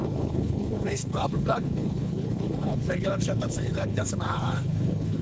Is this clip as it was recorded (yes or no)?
no